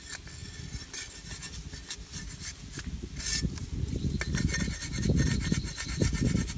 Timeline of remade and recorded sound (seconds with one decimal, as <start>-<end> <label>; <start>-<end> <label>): 0.0-6.6 recorded